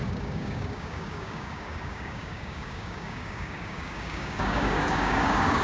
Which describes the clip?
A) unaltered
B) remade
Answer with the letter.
B